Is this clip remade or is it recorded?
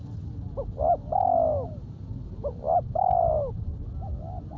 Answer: recorded